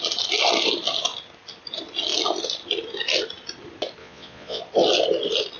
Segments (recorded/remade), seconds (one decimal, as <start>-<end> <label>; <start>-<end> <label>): 0.0-4.0 recorded; 4.0-4.6 remade; 4.6-5.6 recorded